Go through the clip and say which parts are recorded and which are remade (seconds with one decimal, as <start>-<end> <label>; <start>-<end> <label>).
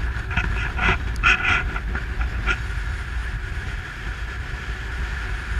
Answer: 0.0-3.2 recorded; 3.2-3.8 remade; 3.8-5.6 recorded